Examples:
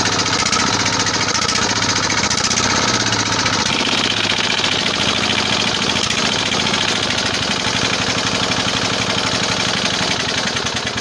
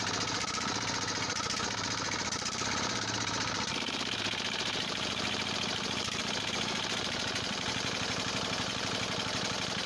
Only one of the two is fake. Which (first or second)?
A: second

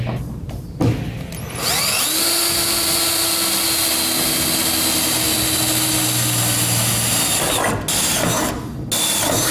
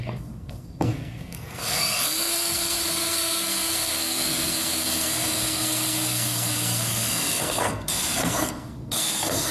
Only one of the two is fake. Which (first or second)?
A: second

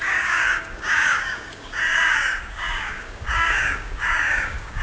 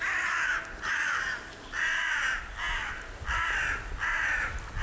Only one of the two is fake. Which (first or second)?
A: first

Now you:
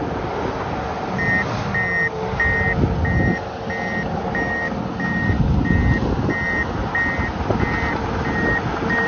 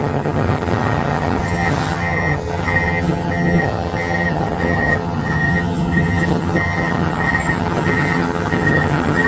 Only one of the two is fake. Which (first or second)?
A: second